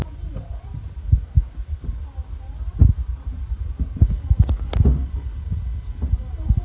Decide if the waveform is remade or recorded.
recorded